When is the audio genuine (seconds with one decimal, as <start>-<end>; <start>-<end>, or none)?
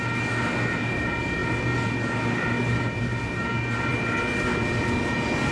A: 0.0-5.5